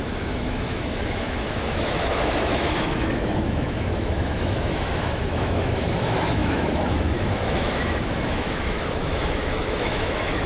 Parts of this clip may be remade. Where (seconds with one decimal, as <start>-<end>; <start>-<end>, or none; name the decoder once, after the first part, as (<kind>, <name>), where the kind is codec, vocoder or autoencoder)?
0.0-10.5 (autoencoder, DAC-VAE)